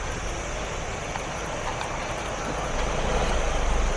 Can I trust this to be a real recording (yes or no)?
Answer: yes